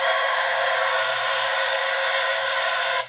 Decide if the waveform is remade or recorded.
remade